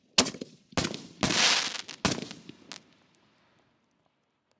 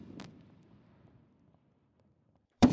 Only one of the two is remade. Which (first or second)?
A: second